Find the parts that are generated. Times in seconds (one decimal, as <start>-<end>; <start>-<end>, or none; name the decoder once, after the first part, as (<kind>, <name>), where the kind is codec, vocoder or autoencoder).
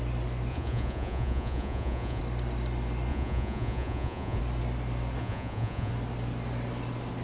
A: 0.5-2.2 (vocoder, Vocos); 3.1-4.4; 5.2-5.9